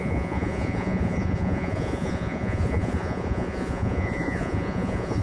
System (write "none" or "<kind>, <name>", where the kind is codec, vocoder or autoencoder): vocoder, Vocos